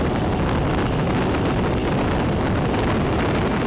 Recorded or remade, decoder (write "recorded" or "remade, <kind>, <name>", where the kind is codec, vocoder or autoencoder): recorded